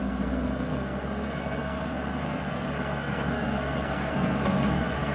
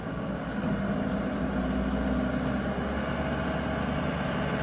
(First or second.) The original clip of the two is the second